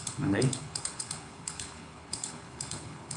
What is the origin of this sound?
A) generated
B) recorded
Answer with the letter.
A